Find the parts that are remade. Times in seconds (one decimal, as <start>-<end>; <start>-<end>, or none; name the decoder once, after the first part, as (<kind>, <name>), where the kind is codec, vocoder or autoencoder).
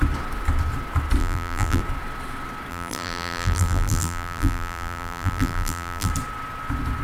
1.2-1.8 (vocoder, BigVGAN v2); 2.7-6.1